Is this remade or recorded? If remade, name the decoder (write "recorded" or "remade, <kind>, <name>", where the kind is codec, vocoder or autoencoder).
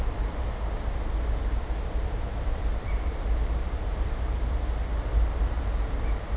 recorded